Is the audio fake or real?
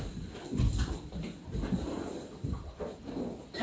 real